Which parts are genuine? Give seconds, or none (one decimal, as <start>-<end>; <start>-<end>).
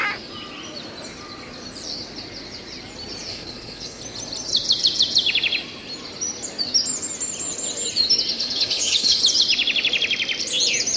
0.0-3.3; 4.0-8.3; 9.2-11.0